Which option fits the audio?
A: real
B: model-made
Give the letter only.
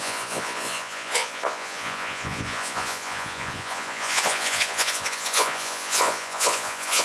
B